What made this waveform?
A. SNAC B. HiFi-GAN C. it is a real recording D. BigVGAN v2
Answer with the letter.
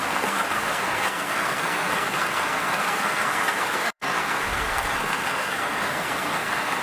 A